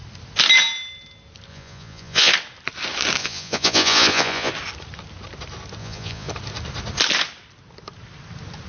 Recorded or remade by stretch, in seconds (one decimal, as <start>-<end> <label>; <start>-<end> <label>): 0.0-1.5 recorded; 1.5-2.3 remade; 2.3-3.2 recorded; 3.2-4.5 remade; 4.5-5.8 recorded; 5.8-6.3 remade; 6.3-8.7 recorded